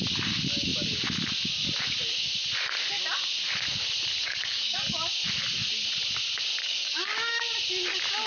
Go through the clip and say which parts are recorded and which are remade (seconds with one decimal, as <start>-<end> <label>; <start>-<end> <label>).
0.0-4.2 recorded; 4.2-5.0 remade; 5.0-6.6 recorded; 6.6-7.4 remade; 7.4-8.3 recorded